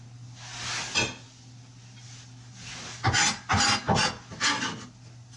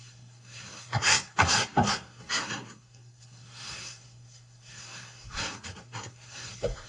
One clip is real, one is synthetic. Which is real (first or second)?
first